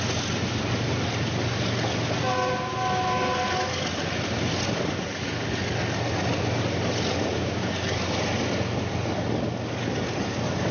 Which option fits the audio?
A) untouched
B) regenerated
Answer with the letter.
A